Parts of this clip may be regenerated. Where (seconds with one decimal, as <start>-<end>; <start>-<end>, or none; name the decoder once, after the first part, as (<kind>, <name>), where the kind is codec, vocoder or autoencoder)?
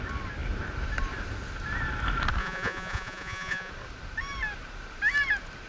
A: 2.4-3.7 (vocoder, Vocos)